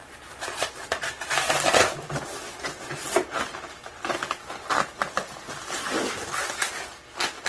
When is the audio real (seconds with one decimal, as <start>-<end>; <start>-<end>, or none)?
0.0-7.5